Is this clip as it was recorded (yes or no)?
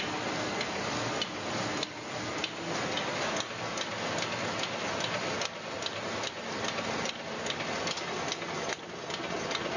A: yes